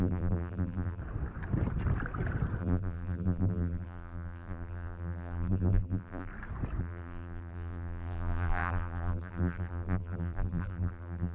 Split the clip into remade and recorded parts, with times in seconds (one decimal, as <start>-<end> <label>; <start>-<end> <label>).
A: 0.0-1.0 remade; 1.0-2.6 recorded; 2.6-6.3 remade; 6.3-6.8 recorded; 6.8-11.3 remade